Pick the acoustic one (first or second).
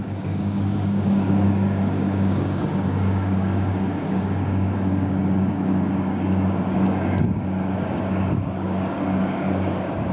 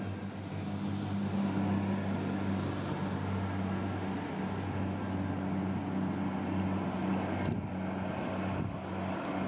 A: second